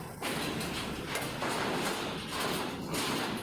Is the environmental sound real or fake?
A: real